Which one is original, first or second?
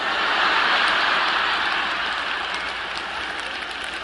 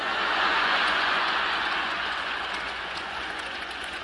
first